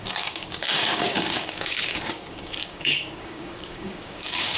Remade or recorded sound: remade